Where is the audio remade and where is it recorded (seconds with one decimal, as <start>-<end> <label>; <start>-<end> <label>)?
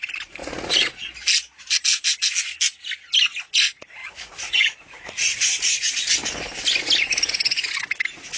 0.0-0.4 recorded; 0.4-1.1 remade; 1.1-4.0 recorded; 4.0-5.9 remade; 5.9-8.4 recorded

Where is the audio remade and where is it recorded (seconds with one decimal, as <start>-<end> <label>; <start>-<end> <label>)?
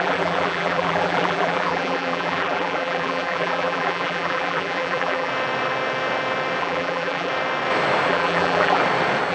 0.0-5.3 remade; 5.3-6.6 recorded; 6.6-7.3 remade; 7.3-8.1 recorded; 8.1-8.8 remade; 8.8-9.3 recorded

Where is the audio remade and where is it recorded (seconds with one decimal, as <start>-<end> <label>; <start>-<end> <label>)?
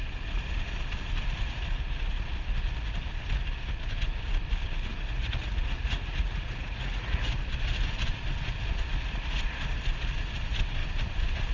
0.0-4.9 recorded; 4.9-7.3 remade; 7.3-11.5 recorded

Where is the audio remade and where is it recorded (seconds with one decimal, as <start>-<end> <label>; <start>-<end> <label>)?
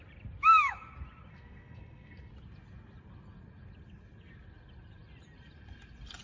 0.0-1.3 recorded; 1.3-2.3 remade; 2.3-6.2 recorded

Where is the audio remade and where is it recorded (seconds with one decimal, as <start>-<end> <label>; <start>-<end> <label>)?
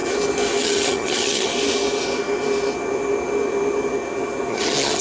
0.0-0.6 recorded; 0.6-1.5 remade; 1.5-4.5 recorded; 4.5-5.0 remade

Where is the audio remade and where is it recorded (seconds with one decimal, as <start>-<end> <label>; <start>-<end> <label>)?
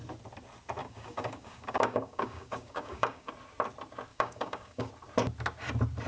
0.0-0.8 recorded; 0.8-3.3 remade; 3.3-4.1 recorded; 4.1-4.9 remade; 4.9-6.1 recorded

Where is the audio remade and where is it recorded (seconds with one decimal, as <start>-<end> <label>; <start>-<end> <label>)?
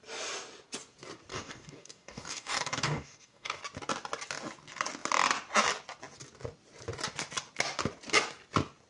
0.0-1.3 recorded; 1.3-3.6 remade; 3.6-8.9 recorded